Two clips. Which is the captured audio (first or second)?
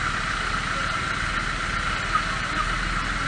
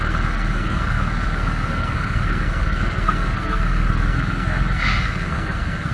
first